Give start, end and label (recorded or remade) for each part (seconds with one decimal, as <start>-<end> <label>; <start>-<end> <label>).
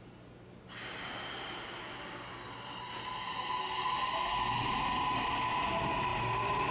0.0-6.7 recorded